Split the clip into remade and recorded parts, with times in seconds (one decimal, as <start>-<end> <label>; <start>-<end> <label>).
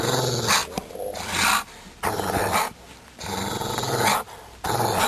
0.0-5.1 recorded